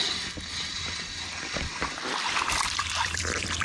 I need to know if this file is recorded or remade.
remade